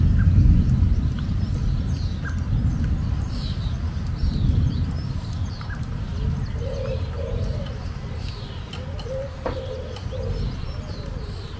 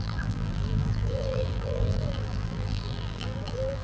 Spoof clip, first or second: second